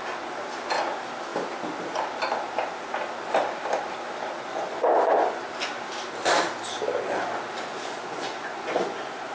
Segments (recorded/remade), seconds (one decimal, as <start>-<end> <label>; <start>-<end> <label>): 0.0-4.5 recorded; 4.5-5.4 remade; 5.4-7.7 recorded; 7.7-9.3 remade